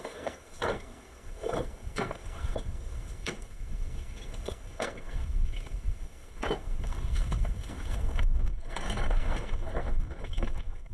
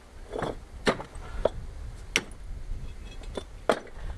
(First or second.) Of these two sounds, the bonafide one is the second